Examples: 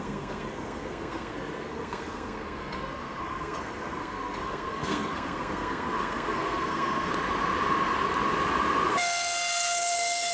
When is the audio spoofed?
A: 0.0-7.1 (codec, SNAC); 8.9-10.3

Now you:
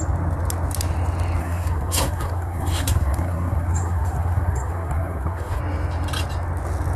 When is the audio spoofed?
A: 1.4-5.6 (codec, SNAC)

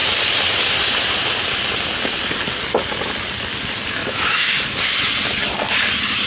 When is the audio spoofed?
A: 4.0-4.5 (autoencoder, DAC-VAE)